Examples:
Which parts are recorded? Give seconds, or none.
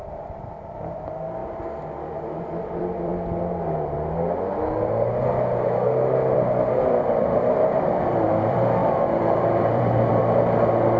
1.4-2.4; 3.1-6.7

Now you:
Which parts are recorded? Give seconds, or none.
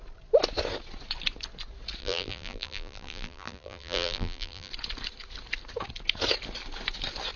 0.0-2.0; 4.7-7.4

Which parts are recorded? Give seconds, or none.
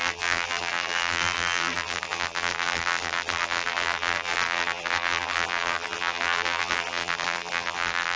none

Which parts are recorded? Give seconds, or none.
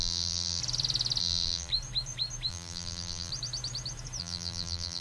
0.6-1.2; 1.7-2.5; 3.3-4.2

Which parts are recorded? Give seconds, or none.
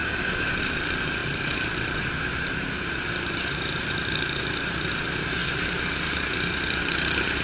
0.0-0.6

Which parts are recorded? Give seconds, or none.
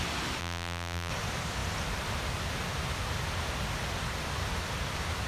0.0-0.4; 1.1-5.3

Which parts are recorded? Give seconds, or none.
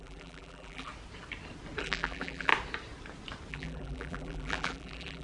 0.9-1.8; 2.5-3.5